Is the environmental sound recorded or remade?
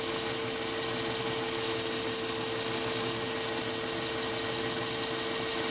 recorded